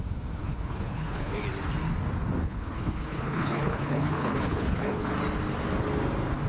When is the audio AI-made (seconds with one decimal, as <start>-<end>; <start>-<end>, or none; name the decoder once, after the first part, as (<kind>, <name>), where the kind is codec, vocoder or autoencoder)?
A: 0.4-1.4 (codec, HILCodec); 2.4-5.1